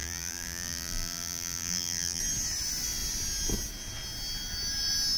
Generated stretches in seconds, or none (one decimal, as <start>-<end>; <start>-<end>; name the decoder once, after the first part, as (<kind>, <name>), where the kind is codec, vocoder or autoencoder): 0.0-2.2 (vocoder, BigVGAN v2)